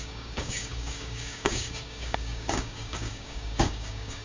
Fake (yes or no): yes